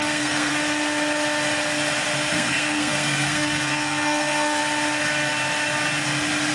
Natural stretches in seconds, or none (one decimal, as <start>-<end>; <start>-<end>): 0.5-2.3; 4.6-6.5

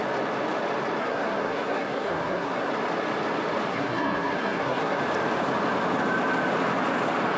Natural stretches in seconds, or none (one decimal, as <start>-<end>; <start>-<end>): 0.0-1.0; 2.7-3.7; 5.0-7.4

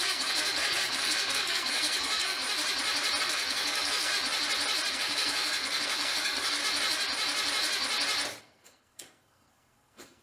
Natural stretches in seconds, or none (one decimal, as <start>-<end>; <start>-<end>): 2.4-3.2; 4.1-4.9; 6.6-8.4

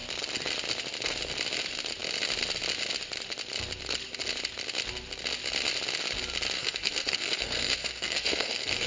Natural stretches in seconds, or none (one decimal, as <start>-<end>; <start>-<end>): 0.0-6.6

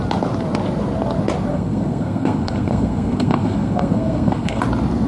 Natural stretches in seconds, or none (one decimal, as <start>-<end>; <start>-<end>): 0.0-1.5; 4.6-5.1

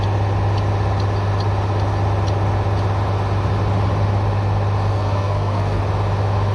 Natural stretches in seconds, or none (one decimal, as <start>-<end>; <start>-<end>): 0.0-4.9; 5.8-6.5

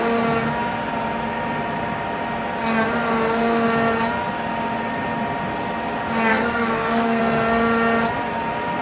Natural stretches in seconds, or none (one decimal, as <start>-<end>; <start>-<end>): 0.0-6.3; 7.2-8.8

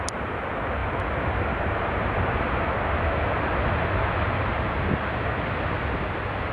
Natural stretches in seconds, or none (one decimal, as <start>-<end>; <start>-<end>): 0.0-6.5